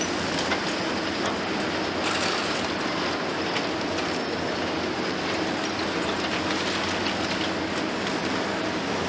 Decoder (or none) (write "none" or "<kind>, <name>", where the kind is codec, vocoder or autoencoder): none